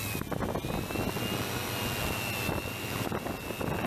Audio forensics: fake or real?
real